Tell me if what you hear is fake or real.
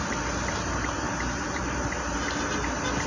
real